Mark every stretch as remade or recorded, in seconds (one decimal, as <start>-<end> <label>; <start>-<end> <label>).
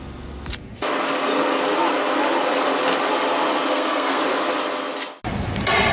0.0-3.7 recorded; 3.7-4.2 remade; 4.2-5.9 recorded